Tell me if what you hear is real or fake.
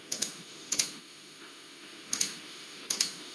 fake